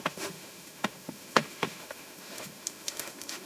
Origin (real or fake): fake